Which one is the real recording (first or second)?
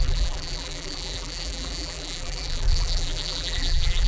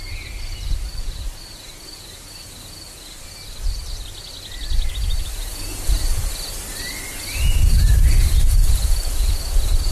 second